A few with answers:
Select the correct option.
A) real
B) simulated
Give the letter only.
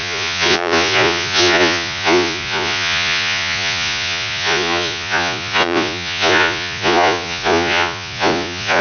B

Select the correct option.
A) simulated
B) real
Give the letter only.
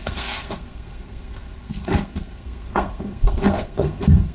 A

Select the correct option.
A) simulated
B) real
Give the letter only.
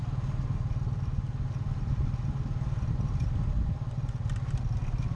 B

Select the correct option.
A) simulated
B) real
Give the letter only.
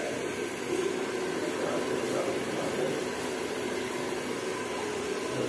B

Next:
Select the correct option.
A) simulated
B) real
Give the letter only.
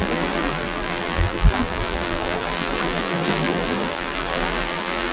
A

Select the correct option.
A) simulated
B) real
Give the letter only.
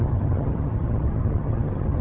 A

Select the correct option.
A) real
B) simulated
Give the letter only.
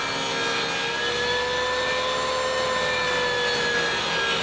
A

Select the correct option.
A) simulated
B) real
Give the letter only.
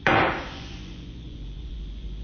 A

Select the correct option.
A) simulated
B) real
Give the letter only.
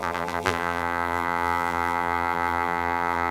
A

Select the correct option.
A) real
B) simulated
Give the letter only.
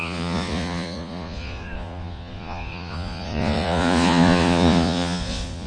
B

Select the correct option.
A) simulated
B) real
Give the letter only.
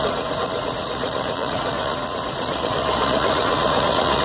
A